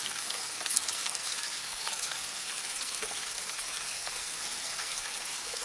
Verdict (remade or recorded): remade